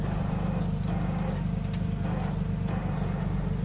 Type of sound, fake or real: real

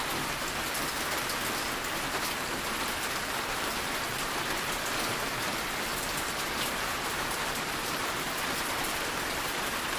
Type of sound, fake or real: fake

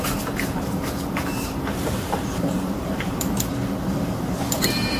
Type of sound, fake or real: fake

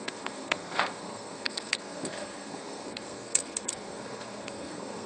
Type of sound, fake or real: fake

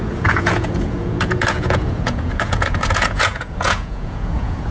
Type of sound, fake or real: fake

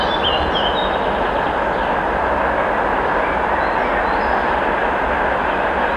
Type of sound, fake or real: real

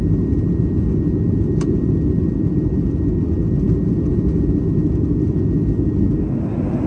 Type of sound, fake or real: real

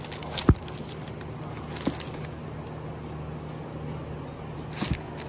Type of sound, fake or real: real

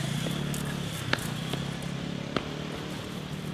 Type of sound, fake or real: real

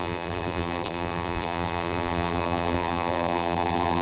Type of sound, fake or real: fake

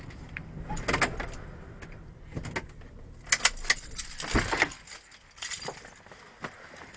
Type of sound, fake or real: real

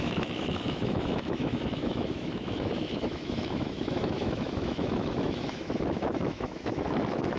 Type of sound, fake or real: fake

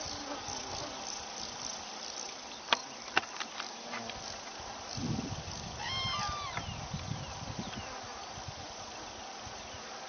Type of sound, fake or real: real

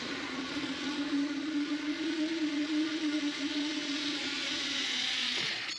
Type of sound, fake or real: fake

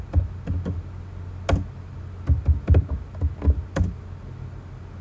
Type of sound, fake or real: real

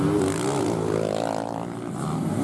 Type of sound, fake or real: real